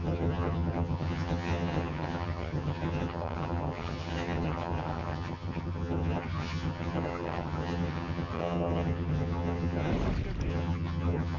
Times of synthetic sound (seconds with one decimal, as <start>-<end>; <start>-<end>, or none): 0.0-9.9; 10.5-11.4